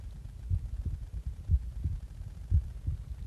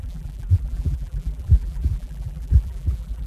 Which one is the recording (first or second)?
first